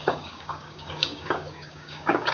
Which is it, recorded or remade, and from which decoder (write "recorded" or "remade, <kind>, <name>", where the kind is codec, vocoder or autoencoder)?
remade, codec, DAC